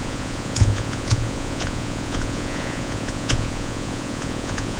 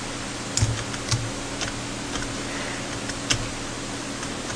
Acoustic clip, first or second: second